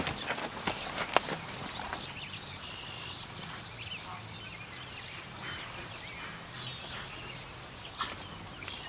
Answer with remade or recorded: recorded